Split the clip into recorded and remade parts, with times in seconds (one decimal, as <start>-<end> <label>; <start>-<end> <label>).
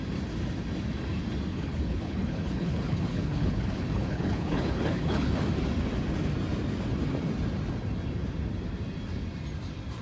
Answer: 0.0-1.5 recorded; 1.5-5.4 remade; 5.4-10.0 recorded